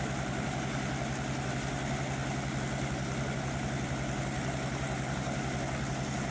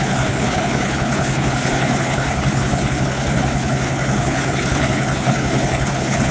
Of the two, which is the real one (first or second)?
first